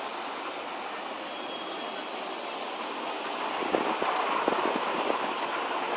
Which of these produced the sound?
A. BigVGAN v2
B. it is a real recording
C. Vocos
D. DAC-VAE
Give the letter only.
B